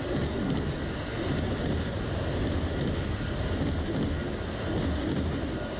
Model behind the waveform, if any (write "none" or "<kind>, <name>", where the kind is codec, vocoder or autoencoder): none